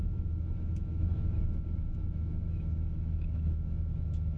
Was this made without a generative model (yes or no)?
no